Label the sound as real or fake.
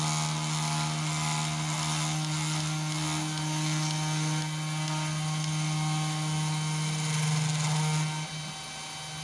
real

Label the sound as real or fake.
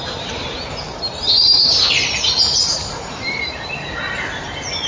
fake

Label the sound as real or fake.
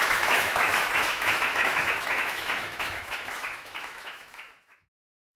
fake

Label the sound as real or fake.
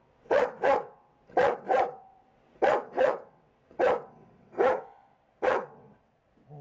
fake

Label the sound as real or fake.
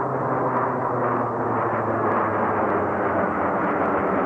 real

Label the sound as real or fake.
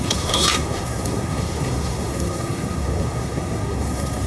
fake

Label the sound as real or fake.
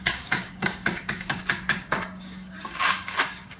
fake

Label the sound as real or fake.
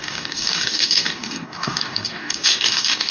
fake